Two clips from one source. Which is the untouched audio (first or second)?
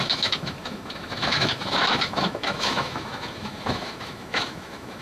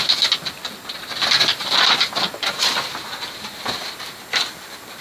second